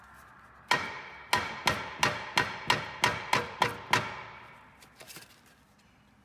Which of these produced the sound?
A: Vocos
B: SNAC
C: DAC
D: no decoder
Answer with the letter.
D